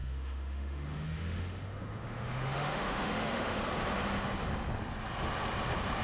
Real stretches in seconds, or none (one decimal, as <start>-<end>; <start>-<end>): 3.6-6.0

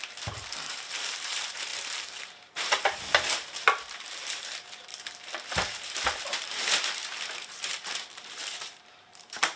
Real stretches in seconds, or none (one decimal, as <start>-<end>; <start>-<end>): 4.9-5.5

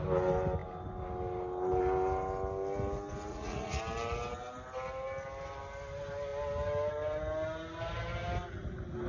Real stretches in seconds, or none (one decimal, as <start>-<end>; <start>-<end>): 0.0-3.3; 3.8-9.1

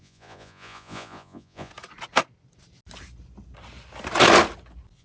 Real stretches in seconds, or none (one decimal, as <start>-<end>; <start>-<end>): 1.7-5.0

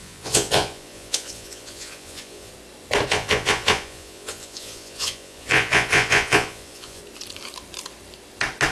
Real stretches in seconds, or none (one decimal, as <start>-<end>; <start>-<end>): 2.5-3.1; 7.0-8.7

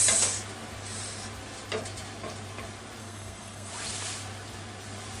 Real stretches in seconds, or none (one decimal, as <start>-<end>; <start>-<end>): 0.0-3.0; 3.7-5.2

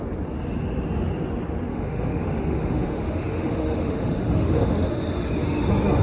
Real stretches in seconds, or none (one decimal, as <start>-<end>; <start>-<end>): 0.0-1.7; 5.3-6.0

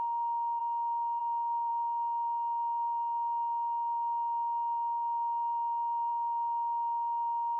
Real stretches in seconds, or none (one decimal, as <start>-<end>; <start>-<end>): none